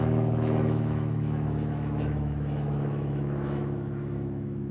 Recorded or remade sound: remade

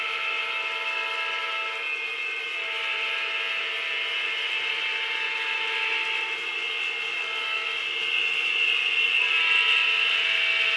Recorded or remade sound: recorded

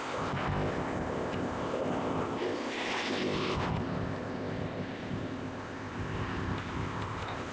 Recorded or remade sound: remade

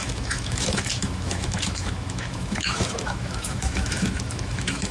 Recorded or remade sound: remade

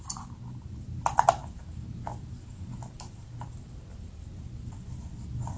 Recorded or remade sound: recorded